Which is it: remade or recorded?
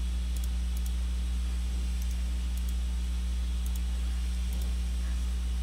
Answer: recorded